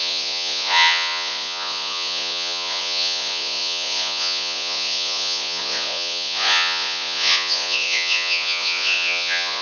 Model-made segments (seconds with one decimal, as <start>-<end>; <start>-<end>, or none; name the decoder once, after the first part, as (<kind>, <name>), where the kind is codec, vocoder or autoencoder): 0.0-9.6 (vocoder, Vocos)